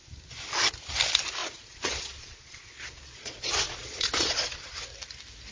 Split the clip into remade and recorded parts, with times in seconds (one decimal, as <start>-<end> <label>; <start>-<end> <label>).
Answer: 0.0-1.4 recorded; 1.4-4.7 remade; 4.7-5.5 recorded